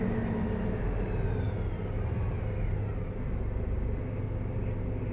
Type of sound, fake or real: real